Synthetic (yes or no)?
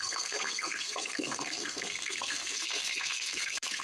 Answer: yes